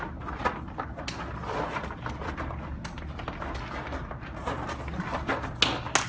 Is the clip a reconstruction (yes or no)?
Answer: no